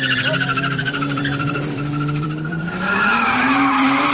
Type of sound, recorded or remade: remade